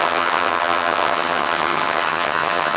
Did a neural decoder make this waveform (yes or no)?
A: yes